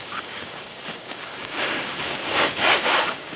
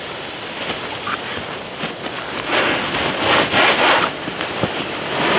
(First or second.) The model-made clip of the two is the first